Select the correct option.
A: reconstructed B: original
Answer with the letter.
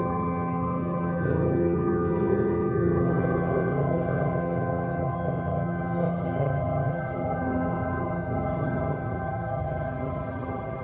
A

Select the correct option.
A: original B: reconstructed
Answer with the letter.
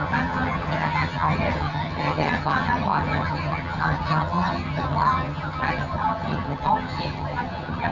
B